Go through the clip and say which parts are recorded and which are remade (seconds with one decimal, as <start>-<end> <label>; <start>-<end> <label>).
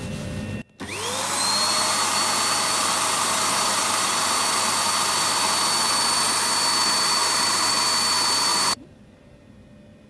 0.0-2.8 recorded; 2.8-4.2 remade; 4.2-7.2 recorded; 7.2-7.7 remade; 7.7-8.5 recorded; 8.5-9.7 remade; 9.7-10.1 recorded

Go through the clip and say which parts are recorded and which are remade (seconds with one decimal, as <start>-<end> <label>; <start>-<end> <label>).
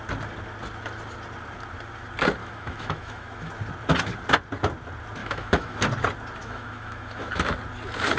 0.0-2.4 recorded; 2.4-3.5 remade; 3.5-5.2 recorded; 5.2-5.8 remade; 5.8-6.4 recorded; 6.4-7.5 remade; 7.5-8.2 recorded